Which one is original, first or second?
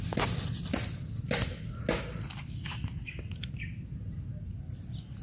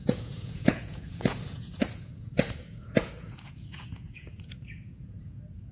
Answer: first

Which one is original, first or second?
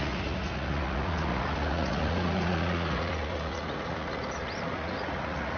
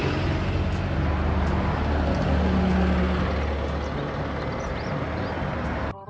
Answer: second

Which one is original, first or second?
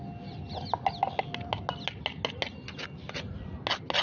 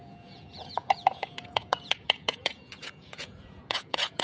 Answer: first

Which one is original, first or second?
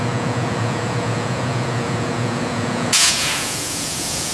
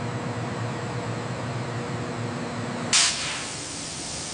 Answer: second